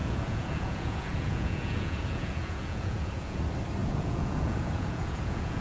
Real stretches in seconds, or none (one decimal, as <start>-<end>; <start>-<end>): 3.4-3.8